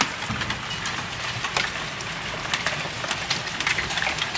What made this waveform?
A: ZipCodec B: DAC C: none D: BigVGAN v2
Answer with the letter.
C